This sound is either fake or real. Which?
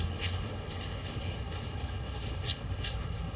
fake